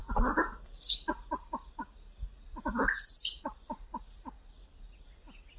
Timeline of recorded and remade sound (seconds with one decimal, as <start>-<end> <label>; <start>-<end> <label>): 0.0-5.6 recorded